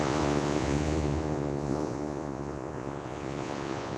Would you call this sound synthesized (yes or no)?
yes